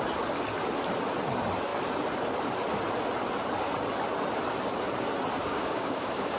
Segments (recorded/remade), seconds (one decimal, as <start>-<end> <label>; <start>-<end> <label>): 0.0-5.5 recorded; 5.5-6.4 remade